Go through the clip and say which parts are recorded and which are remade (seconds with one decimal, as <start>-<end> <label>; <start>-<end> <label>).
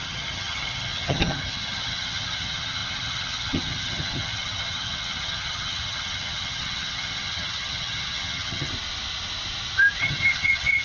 0.0-8.7 remade; 8.7-10.0 recorded; 10.0-10.8 remade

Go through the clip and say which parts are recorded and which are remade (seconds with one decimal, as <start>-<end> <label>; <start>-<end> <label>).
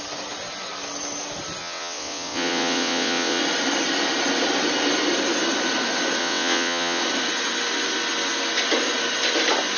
0.0-1.6 recorded; 1.6-3.4 remade; 3.4-6.2 recorded; 6.2-7.0 remade; 7.0-9.8 recorded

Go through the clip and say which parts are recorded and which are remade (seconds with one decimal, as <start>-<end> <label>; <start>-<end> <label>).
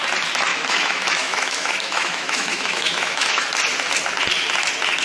0.0-0.5 recorded; 0.5-3.5 remade; 3.5-5.0 recorded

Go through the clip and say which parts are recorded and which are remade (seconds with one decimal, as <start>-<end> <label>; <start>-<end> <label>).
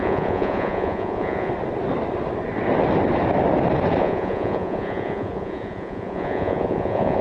0.0-1.5 remade; 1.5-4.0 recorded; 4.0-7.2 remade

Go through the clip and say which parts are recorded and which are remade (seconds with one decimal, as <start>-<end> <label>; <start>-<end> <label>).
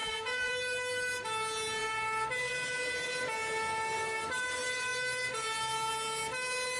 0.0-0.5 remade; 0.5-6.8 recorded